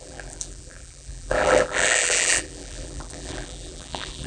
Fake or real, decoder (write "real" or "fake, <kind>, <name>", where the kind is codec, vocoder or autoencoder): fake, vocoder, BigVGAN v2